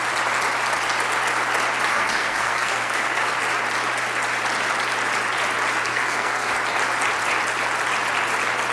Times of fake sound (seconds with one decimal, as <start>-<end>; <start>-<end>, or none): 1.9-3.4; 5.9-6.5